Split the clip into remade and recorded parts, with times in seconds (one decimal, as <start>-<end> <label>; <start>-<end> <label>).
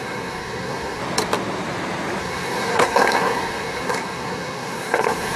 0.0-1.0 remade; 1.0-2.2 recorded; 2.2-5.4 remade